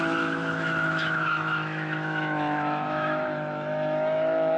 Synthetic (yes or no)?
yes